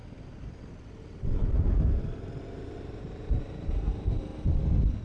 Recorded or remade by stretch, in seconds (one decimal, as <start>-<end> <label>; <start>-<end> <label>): 0.0-2.4 recorded; 2.4-4.3 remade; 4.3-5.0 recorded